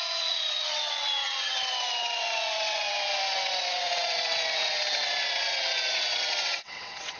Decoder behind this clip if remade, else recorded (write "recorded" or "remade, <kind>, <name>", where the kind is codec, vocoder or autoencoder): remade, vocoder, WaveNeXt